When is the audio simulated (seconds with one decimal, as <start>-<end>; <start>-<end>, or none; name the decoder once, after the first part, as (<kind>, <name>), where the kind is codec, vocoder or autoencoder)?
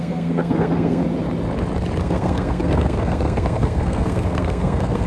0.0-1.0 (codec, SNAC); 2.0-5.1